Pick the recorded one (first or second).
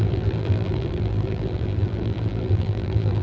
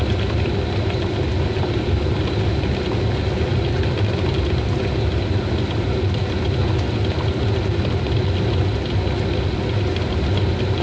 second